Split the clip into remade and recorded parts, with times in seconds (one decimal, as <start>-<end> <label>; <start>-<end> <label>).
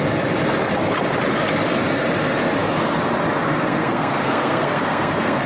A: 0.0-3.5 recorded; 3.5-5.5 remade